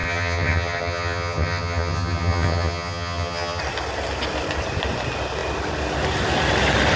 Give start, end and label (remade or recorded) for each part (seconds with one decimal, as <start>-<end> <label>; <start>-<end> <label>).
0.0-3.6 remade; 3.6-7.0 recorded